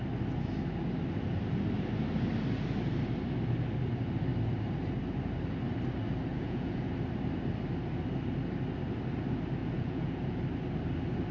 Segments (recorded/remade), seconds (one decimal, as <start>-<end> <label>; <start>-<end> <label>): 0.0-6.3 recorded; 6.3-6.9 remade; 6.9-9.6 recorded; 9.6-10.4 remade; 10.4-11.3 recorded